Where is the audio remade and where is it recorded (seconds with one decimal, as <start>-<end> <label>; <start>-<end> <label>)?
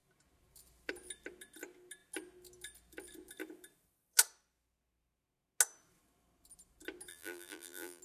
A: 0.0-7.1 recorded; 7.1-8.0 remade